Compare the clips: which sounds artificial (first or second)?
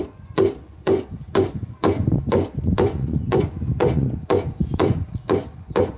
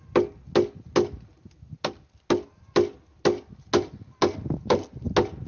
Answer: first